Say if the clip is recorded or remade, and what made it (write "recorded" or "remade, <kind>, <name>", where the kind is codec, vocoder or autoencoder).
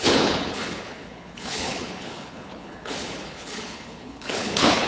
remade, codec, HILCodec